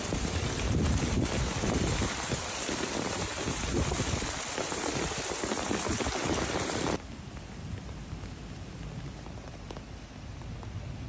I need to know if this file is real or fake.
fake